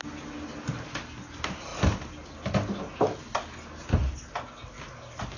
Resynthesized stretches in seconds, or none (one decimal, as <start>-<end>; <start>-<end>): none